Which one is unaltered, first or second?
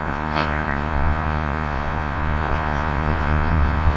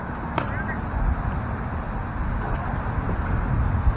second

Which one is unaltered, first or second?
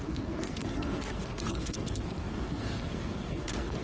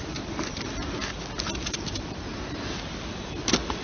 second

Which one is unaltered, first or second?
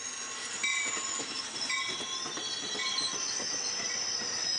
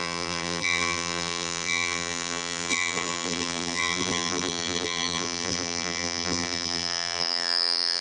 first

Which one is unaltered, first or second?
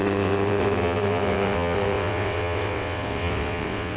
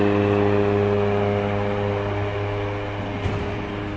second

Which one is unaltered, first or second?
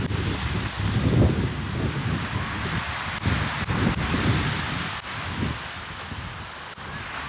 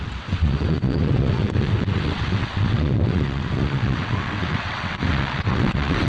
first